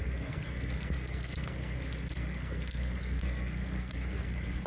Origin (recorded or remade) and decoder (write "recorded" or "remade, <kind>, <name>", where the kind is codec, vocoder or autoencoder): remade, codec, SNAC